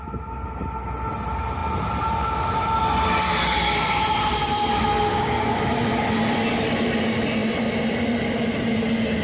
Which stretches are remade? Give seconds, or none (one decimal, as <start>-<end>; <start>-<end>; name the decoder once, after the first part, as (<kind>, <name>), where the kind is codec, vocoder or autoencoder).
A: 5.1-5.6 (codec, DAC)